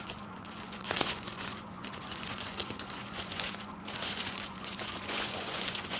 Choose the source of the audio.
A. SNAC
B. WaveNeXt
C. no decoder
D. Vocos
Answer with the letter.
D